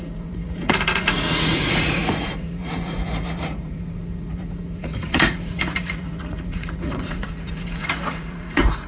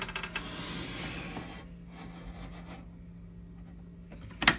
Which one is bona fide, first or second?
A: second